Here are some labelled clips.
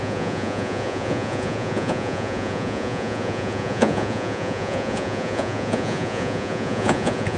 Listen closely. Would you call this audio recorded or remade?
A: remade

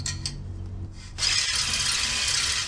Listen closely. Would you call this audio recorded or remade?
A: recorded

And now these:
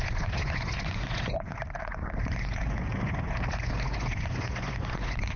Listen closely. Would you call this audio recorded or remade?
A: remade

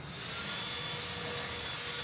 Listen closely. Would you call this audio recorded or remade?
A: recorded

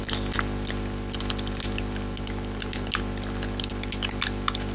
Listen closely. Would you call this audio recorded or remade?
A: recorded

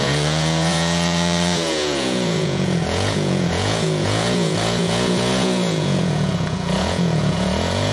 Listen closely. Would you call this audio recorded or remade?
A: remade